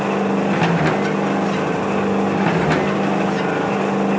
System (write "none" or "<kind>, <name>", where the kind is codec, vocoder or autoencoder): none